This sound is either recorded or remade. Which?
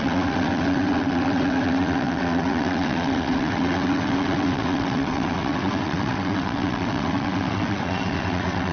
remade